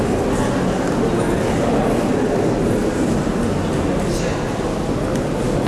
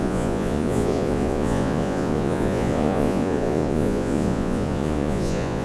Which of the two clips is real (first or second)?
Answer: first